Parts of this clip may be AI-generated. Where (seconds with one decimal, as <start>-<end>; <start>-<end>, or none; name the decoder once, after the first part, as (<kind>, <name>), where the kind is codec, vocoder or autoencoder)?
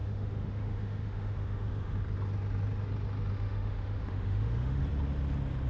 0.0-2.0 (autoencoder, DAC-VAE); 3.3-4.8